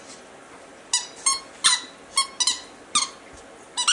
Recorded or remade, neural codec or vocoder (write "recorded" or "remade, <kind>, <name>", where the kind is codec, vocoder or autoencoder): recorded